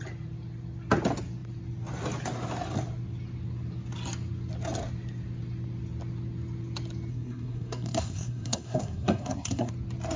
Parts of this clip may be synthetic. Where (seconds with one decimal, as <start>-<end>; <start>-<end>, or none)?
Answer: 7.1-9.7